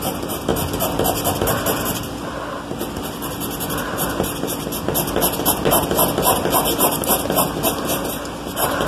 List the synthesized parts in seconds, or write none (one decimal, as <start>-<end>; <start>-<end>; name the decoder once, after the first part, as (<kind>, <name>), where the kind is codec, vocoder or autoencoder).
none